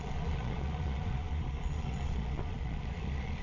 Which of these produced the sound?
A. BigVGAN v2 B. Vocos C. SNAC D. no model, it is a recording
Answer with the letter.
B